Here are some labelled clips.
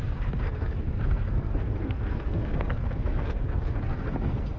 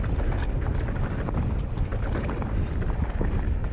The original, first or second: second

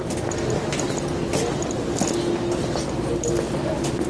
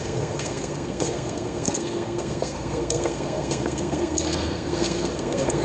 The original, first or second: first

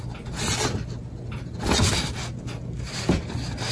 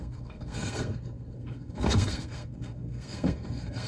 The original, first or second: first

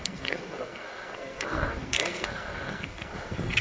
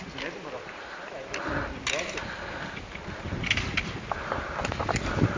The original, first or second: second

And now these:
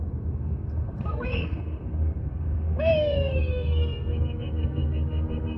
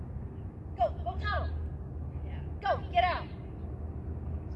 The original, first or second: second